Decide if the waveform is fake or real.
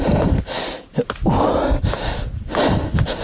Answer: real